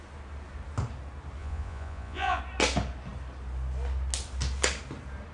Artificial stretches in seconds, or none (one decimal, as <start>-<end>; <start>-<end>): 1.4-2.4